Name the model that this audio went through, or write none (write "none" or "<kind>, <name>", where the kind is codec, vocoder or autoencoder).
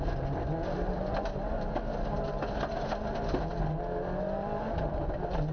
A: none